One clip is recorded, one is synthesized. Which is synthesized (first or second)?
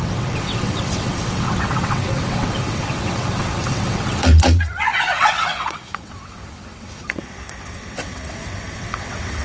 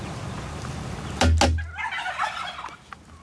first